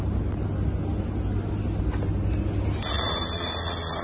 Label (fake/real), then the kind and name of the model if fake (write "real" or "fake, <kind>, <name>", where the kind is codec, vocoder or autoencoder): real